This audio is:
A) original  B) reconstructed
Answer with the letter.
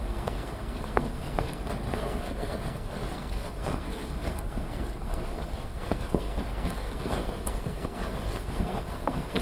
B